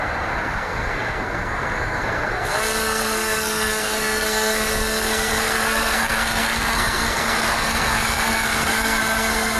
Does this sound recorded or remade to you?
remade